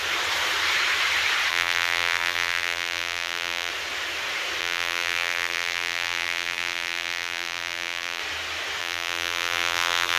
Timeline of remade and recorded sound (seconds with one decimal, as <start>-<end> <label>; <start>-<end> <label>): 0.0-1.5 recorded; 1.5-3.7 remade; 3.7-4.6 recorded; 4.6-8.2 remade; 8.2-8.8 recorded; 8.8-10.2 remade